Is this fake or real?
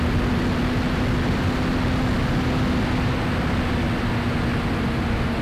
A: real